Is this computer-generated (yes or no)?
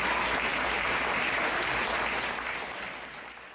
no